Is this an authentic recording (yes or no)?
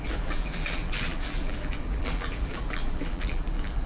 no